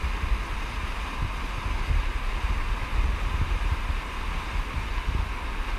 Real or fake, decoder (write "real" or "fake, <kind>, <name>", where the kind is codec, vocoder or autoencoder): real